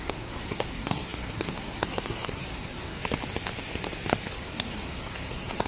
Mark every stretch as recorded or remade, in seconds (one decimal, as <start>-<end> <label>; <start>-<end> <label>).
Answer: 0.0-3.0 remade; 3.0-4.3 recorded; 4.3-5.7 remade